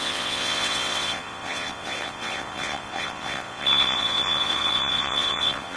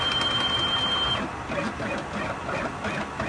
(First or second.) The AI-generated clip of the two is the first